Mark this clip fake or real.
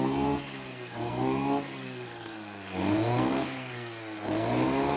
fake